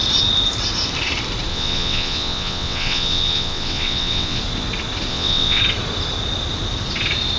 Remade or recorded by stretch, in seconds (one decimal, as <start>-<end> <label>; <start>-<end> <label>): 0.0-1.5 recorded; 1.5-4.4 remade; 4.4-5.1 recorded; 5.1-5.6 remade; 5.6-7.4 recorded